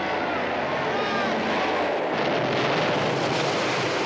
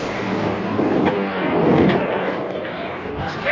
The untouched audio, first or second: first